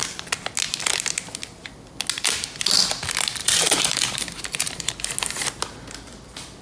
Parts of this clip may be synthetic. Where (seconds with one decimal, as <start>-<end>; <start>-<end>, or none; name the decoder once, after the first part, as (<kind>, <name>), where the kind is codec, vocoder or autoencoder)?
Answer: 3.4-4.9 (vocoder, BigVGAN v2)